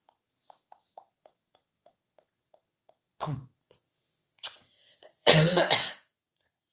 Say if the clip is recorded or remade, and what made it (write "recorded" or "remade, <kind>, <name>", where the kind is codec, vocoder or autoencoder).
remade, vocoder, WaveNeXt